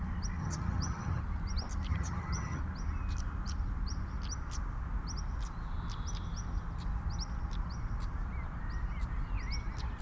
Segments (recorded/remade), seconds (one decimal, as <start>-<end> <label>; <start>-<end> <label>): 0.0-0.4 recorded; 0.4-1.2 remade; 1.2-1.9 recorded; 1.9-2.6 remade; 2.6-10.0 recorded